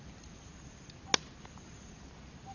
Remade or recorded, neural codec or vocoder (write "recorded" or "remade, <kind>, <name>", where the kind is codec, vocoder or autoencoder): recorded